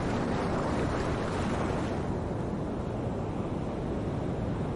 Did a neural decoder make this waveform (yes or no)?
no